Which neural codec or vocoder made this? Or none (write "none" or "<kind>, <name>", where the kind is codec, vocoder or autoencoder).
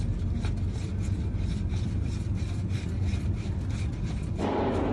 none